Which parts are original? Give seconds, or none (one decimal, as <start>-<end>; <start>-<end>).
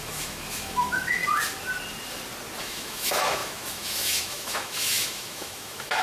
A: 1.2-2.6